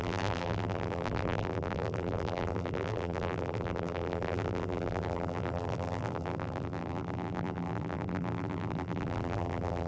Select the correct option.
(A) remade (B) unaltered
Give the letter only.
A